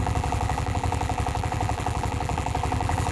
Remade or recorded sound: remade